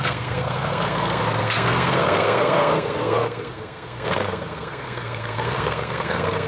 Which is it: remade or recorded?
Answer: remade